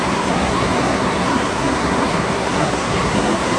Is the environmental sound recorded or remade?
remade